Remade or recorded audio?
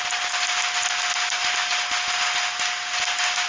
recorded